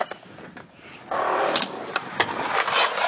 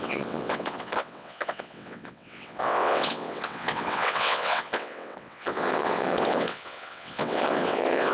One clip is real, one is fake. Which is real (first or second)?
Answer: first